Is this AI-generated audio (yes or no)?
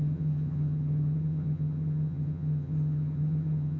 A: yes